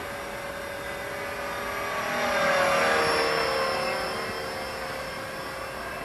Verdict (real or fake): real